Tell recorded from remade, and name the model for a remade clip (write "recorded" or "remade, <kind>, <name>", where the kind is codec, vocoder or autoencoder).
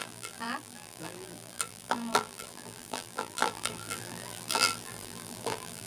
remade, vocoder, BigVGAN v2